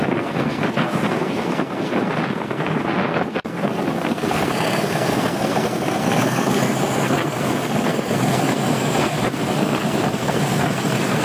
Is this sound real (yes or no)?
no